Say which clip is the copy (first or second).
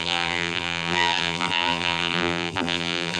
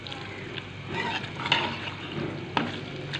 first